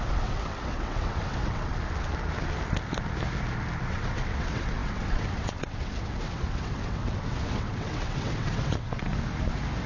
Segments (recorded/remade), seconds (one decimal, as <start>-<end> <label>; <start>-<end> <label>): 0.0-1.7 remade; 1.7-3.8 recorded; 3.8-9.1 remade; 9.1-9.9 recorded

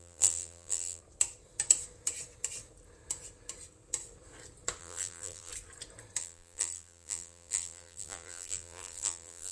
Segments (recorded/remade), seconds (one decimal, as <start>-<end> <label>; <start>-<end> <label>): 0.0-1.0 remade; 1.0-4.8 recorded; 4.8-5.5 remade; 5.5-6.2 recorded; 6.2-9.5 remade

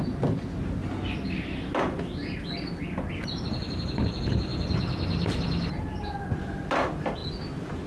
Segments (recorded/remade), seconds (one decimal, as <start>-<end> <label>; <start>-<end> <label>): 0.0-7.9 recorded

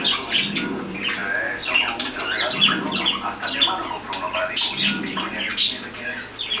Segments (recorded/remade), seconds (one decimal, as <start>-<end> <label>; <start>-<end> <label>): 0.0-6.6 recorded

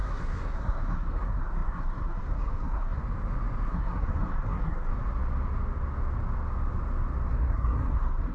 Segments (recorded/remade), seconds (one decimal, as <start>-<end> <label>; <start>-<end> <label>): 0.0-3.0 remade; 3.0-3.7 recorded; 3.7-4.9 remade; 4.9-7.3 recorded; 7.3-8.3 remade

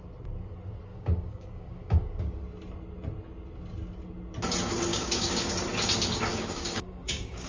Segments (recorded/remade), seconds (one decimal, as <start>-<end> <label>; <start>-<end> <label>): 0.0-0.9 recorded; 0.9-2.4 remade; 2.4-4.9 recorded; 4.9-5.5 remade; 5.5-6.3 recorded; 6.3-7.5 remade

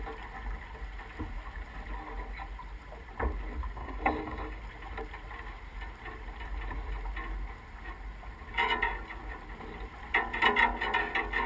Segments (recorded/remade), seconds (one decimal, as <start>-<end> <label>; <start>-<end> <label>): 0.0-3.8 recorded; 3.8-4.6 remade; 4.6-11.5 recorded

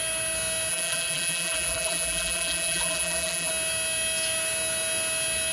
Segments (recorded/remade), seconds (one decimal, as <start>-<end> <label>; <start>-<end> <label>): 0.0-0.7 recorded; 0.7-3.5 remade; 3.5-5.5 recorded